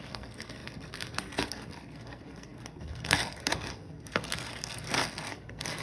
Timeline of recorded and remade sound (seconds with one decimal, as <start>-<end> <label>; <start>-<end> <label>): 0.0-5.8 remade